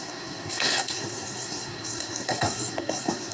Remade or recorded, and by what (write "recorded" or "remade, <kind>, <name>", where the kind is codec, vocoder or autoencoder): remade, codec, SNAC